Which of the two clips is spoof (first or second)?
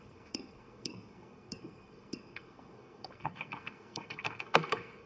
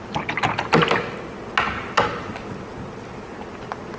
first